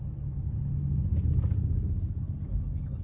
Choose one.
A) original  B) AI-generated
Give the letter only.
A